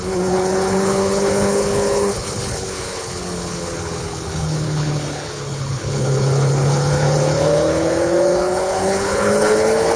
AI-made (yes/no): yes